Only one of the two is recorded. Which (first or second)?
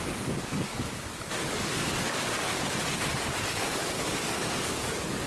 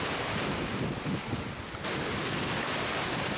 second